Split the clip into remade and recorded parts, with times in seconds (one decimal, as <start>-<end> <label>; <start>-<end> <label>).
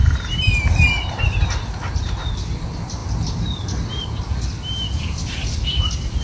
0.0-6.2 recorded